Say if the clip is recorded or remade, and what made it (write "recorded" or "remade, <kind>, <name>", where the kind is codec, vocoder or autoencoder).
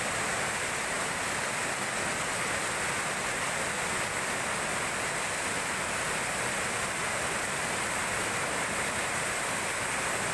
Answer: recorded